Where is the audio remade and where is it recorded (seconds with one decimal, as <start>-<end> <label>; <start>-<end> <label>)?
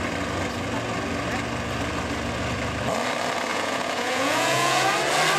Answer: 0.0-3.5 recorded; 3.5-4.9 remade; 4.9-5.4 recorded